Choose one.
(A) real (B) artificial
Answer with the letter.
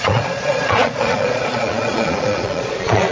B